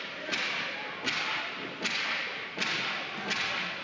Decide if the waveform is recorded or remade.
recorded